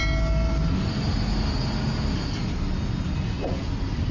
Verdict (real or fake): real